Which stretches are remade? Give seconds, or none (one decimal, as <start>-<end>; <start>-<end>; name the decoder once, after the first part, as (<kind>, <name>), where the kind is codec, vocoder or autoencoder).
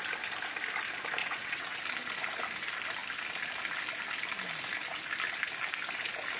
1.2-1.8 (vocoder, WaveNeXt)